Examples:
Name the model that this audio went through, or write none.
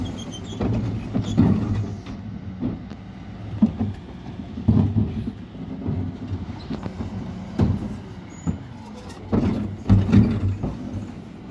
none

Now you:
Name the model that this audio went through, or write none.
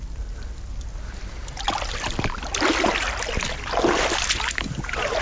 none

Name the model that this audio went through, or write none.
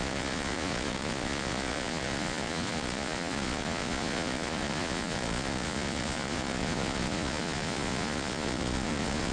vocoder, Vocos